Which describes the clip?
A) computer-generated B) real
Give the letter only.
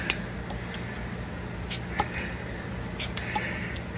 B